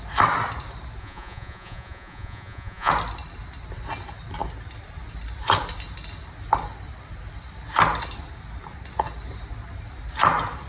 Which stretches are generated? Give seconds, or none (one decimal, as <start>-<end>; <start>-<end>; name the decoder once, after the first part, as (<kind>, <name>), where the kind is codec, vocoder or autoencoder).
1.0-2.9 (vocoder, Vocos)